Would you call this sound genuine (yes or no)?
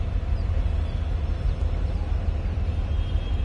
yes